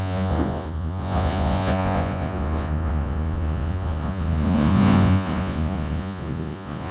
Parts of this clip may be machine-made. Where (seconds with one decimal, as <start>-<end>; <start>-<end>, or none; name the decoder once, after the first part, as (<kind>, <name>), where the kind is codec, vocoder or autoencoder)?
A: 0.0-6.9 (vocoder, Vocos)